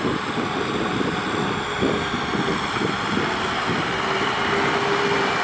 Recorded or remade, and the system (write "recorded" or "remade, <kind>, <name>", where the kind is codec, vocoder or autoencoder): recorded